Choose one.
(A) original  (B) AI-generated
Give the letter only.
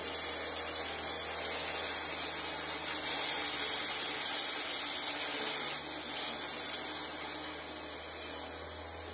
A